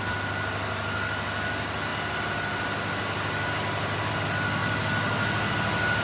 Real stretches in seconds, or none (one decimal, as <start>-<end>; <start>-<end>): 0.0-6.0